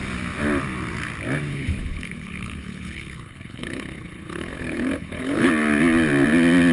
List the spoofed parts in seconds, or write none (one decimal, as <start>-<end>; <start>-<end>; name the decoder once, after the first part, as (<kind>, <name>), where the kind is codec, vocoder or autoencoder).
1.5-5.5 (codec, HILCodec)